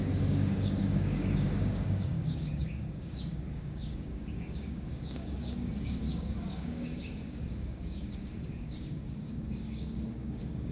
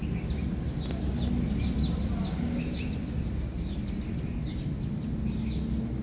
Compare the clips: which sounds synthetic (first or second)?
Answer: first